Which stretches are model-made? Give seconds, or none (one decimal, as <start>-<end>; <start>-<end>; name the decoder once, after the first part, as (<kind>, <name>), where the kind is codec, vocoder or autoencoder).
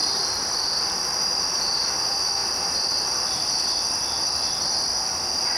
none